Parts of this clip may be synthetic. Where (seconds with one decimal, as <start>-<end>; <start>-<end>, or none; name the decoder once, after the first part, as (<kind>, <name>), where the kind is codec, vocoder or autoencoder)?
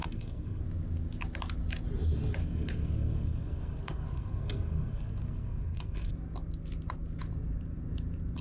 0.0-0.6 (codec, SNAC); 2.4-6.1